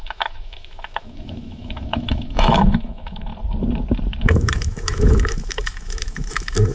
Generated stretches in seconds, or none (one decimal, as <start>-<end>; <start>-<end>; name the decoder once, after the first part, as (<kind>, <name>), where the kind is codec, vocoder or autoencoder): 0.0-3.3 (autoencoder, DAC-VAE); 4.2-6.7